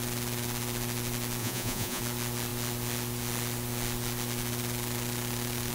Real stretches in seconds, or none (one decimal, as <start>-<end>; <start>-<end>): 0.0-1.4; 2.0-5.7